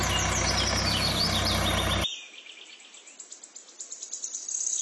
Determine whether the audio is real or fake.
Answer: real